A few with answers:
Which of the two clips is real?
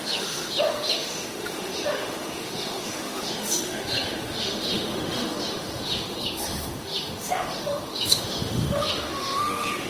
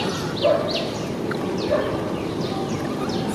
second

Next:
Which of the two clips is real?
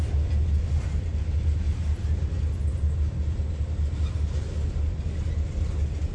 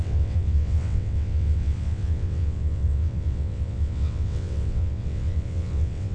first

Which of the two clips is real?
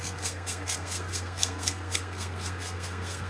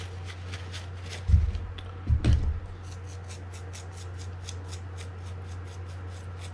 second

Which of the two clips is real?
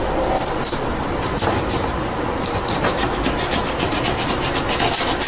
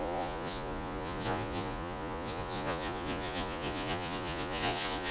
first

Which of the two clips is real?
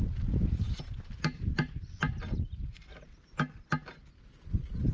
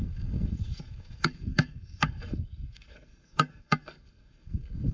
first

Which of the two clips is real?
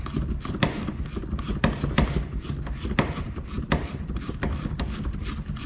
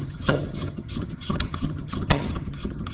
first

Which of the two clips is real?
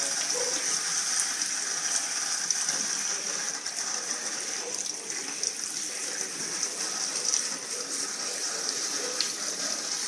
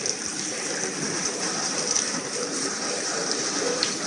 first